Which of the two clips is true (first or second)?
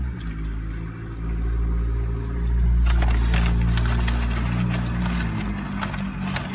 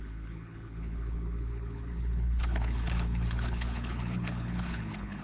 first